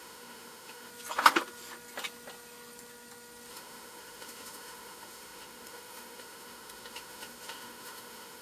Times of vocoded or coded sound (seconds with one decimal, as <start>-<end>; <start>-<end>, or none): 0.0-0.9; 3.5-8.4